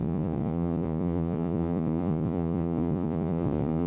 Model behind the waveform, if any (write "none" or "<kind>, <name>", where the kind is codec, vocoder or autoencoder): vocoder, Vocos